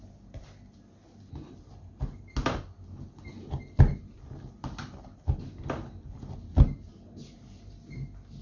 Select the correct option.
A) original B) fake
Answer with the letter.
A